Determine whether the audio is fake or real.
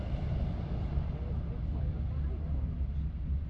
real